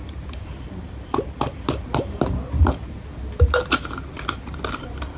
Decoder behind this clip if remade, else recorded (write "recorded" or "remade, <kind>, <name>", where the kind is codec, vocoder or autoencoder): recorded